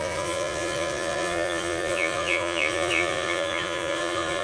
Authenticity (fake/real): fake